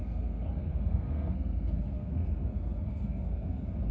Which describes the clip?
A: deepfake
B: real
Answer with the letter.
A